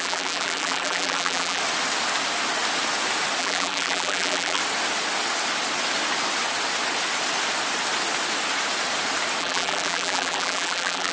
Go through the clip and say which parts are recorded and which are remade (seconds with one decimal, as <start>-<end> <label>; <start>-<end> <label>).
0.0-1.6 remade; 1.6-3.4 recorded; 3.4-4.6 remade; 4.6-9.4 recorded; 9.4-11.1 remade